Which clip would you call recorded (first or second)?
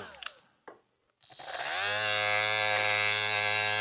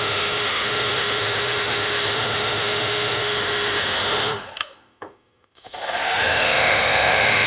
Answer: first